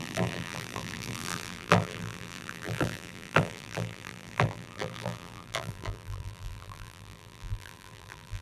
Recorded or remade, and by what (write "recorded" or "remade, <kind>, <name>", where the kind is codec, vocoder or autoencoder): remade, vocoder, BigVGAN v2